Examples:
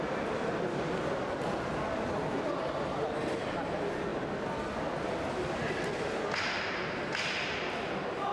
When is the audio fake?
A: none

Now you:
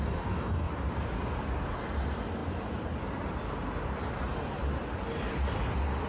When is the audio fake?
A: 0.0-0.7 (codec, DAC)